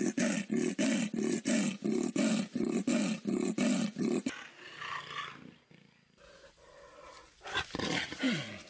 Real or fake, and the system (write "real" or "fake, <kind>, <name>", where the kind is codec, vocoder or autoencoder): real